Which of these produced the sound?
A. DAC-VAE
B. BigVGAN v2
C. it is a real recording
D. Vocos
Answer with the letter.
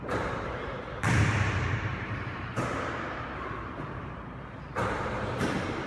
B